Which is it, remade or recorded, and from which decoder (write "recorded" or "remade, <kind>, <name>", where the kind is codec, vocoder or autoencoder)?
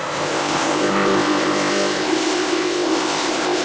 remade, codec, ZipCodec